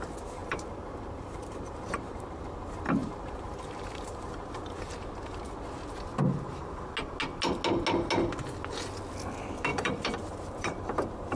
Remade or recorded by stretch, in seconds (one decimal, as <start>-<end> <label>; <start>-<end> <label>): 0.0-0.4 recorded; 0.4-2.4 remade; 2.4-3.0 recorded; 3.0-4.9 remade; 4.9-9.7 recorded; 9.7-11.4 remade